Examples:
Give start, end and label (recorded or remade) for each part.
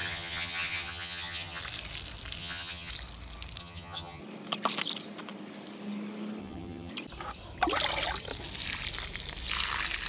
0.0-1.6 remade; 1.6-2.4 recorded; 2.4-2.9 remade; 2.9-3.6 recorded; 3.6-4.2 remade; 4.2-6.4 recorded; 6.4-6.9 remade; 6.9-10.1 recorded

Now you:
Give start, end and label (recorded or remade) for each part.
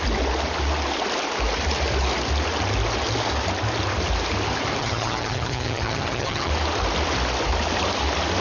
0.0-4.8 recorded; 4.8-6.5 remade; 6.5-8.4 recorded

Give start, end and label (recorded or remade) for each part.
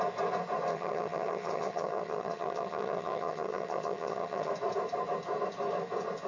0.0-0.7 recorded; 0.7-4.5 remade; 4.5-6.3 recorded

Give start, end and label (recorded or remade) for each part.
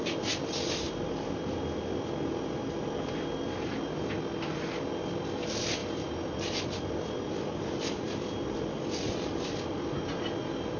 0.0-10.8 recorded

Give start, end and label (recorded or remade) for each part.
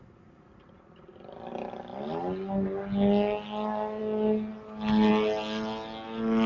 0.0-6.5 recorded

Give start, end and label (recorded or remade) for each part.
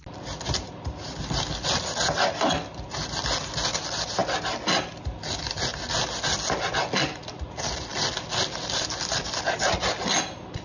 0.0-10.6 recorded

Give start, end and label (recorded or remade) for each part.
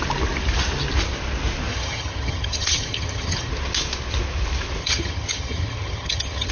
0.0-1.7 recorded; 1.7-3.5 remade; 3.5-4.8 recorded; 4.8-6.5 remade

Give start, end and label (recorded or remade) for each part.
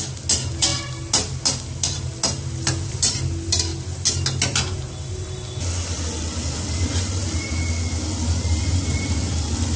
0.0-9.8 recorded